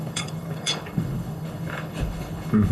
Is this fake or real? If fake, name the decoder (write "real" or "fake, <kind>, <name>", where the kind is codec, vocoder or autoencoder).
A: fake, codec, HILCodec